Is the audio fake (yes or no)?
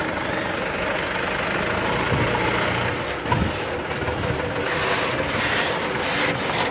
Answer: no